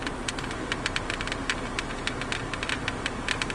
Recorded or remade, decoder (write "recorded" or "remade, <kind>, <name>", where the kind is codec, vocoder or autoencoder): recorded